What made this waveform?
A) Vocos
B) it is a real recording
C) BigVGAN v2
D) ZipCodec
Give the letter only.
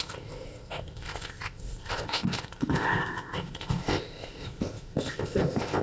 D